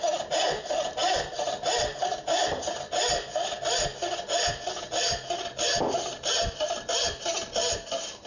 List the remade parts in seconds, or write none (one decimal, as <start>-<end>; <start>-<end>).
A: none